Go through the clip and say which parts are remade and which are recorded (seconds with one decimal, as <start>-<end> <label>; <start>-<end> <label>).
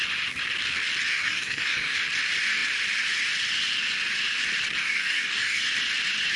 0.0-1.1 recorded; 1.1-2.0 remade; 2.0-4.8 recorded; 4.8-5.6 remade; 5.6-6.4 recorded